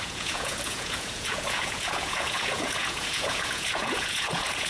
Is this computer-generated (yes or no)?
yes